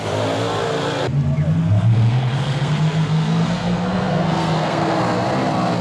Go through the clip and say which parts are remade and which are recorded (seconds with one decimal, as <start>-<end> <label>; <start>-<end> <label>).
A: 0.0-1.6 recorded; 1.6-5.0 remade; 5.0-5.8 recorded